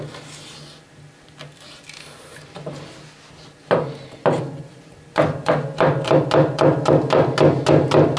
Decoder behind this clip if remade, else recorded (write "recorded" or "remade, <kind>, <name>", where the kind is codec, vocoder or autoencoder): recorded